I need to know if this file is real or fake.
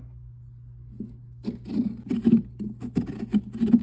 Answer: real